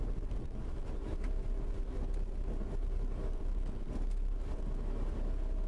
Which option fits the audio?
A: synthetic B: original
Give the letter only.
B